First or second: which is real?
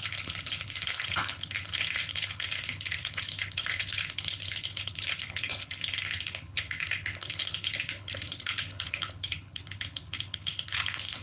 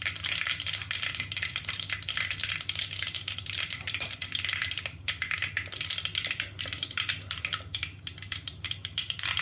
second